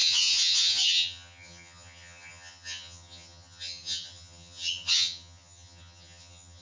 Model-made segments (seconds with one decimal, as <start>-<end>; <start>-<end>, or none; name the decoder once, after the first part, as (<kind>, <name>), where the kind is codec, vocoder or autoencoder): 0.0-6.6 (vocoder, HiFi-GAN)